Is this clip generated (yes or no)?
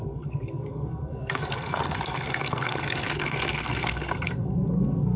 yes